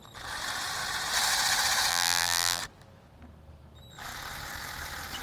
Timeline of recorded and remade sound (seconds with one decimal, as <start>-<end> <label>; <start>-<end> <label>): 0.0-1.9 recorded; 1.9-2.6 remade; 2.6-5.2 recorded